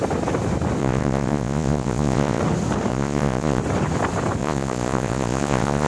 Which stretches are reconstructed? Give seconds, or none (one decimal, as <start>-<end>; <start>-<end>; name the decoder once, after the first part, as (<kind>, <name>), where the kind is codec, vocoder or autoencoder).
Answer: 0.8-2.4 (vocoder, Vocos); 2.9-3.6; 4.4-5.9

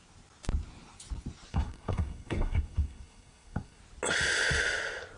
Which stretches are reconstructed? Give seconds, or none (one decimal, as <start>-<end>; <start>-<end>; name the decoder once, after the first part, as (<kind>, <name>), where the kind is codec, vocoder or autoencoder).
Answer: 1.5-3.8 (codec, SNAC)